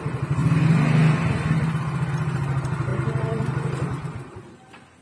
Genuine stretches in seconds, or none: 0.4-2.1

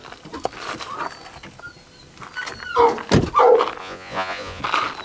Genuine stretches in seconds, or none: 0.0-3.8; 4.6-5.0

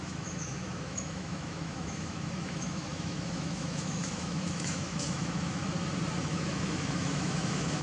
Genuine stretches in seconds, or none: 5.6-6.2

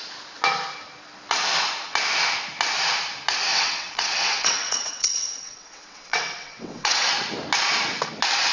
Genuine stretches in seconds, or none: 0.0-3.5; 7.1-8.5

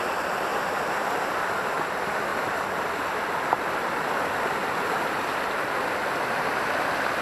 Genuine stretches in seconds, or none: 0.0-0.5; 1.3-7.2

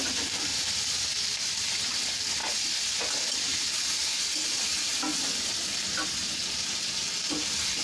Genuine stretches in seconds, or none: 0.0-6.6

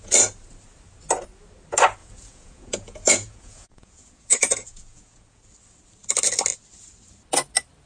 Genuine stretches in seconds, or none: 0.0-2.0; 5.4-7.9